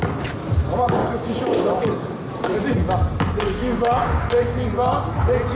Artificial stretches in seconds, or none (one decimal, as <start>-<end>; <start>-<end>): 1.0-1.9; 3.6-4.2